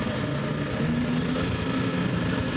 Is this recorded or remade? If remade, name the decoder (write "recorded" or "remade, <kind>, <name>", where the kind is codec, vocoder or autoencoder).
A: recorded